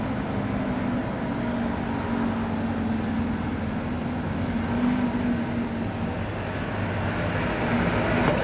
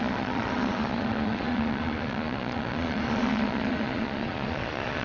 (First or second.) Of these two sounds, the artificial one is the second